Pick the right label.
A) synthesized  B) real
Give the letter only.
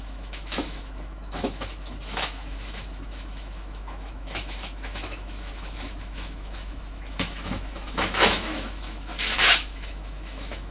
A